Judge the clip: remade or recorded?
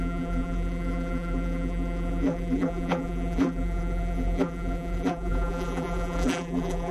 remade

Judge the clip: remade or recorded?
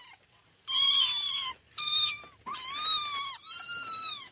recorded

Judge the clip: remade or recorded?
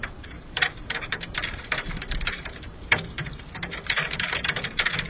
remade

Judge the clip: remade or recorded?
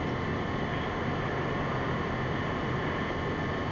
recorded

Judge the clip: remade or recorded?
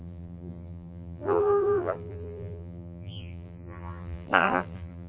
remade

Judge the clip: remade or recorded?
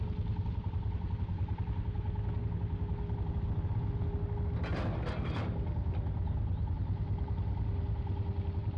recorded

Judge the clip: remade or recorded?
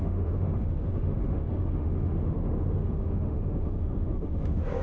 remade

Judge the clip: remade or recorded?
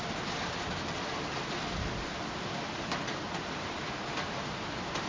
recorded